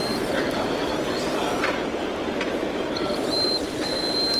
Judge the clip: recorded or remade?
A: remade